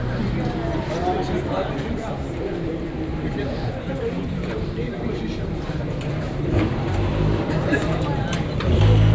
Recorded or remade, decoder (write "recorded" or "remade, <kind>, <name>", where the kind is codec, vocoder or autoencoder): remade, vocoder, BigVGAN v2